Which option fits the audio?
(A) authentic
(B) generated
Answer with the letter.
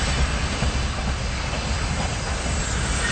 A